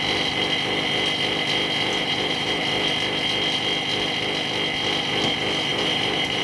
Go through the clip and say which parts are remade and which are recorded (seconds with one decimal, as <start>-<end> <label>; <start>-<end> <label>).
0.0-1.9 recorded; 1.9-2.6 remade; 2.6-5.7 recorded; 5.7-6.4 remade